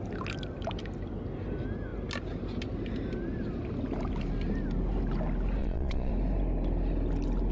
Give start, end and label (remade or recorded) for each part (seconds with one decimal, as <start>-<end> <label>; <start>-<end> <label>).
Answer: 0.0-5.6 recorded; 5.6-6.1 remade; 6.1-7.5 recorded